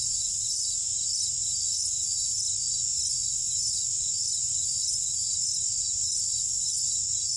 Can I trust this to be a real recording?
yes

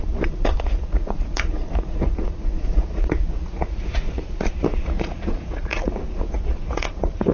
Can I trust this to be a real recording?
no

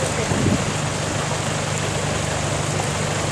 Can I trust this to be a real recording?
yes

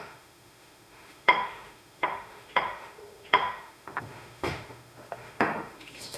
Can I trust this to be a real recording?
no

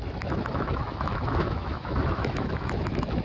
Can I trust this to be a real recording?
no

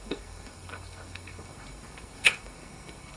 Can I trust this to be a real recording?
no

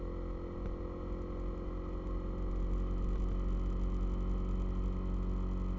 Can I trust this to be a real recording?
yes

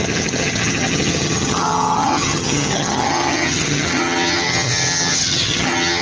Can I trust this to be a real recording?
no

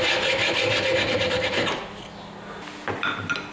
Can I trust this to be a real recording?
yes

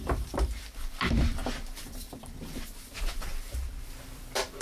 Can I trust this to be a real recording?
no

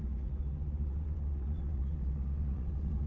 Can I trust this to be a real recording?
no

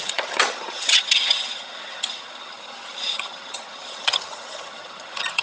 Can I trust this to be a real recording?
no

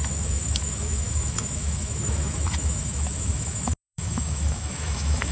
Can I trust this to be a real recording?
no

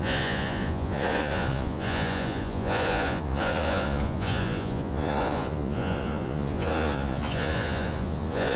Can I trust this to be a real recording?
no